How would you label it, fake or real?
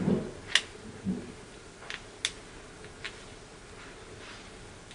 real